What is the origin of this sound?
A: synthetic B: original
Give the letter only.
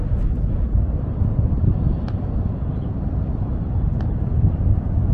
B